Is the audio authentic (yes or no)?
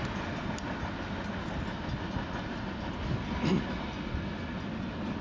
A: yes